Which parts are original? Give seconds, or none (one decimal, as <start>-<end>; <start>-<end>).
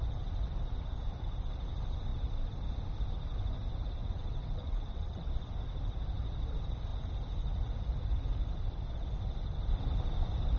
0.0-4.0; 5.3-10.6